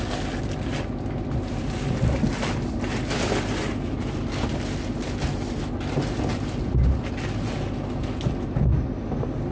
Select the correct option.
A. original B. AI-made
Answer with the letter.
A